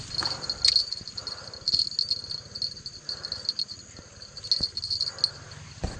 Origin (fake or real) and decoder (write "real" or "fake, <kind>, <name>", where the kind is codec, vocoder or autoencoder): real